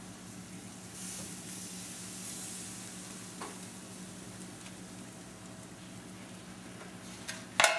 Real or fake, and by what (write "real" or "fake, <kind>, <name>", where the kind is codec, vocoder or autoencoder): real